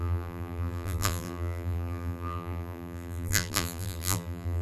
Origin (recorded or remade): remade